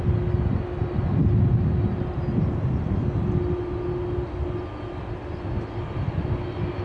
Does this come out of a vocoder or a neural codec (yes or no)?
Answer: no